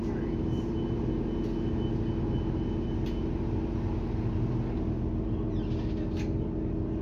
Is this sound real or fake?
real